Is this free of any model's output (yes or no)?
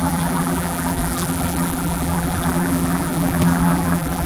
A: no